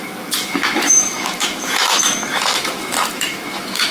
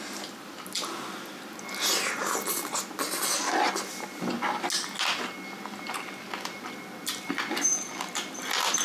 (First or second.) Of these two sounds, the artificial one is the first